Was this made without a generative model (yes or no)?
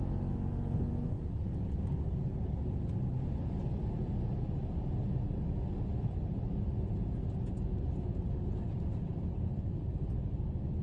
yes